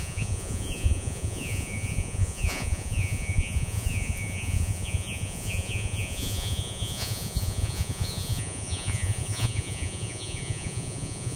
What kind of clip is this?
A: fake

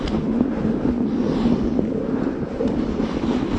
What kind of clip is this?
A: real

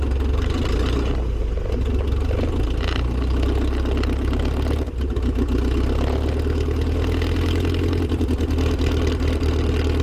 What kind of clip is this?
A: real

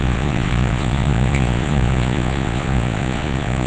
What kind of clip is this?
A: fake